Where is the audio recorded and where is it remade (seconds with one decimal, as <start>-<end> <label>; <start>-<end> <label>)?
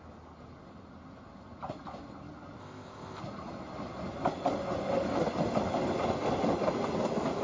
0.0-2.6 recorded; 2.6-3.2 remade; 3.2-7.4 recorded